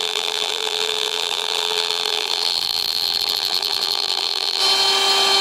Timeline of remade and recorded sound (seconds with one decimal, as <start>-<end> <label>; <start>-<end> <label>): 0.0-4.6 remade; 4.6-5.4 recorded